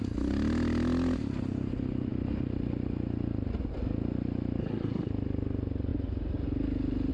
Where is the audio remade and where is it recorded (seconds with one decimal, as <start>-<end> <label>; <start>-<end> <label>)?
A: 0.0-4.6 recorded; 4.6-5.1 remade; 5.1-7.1 recorded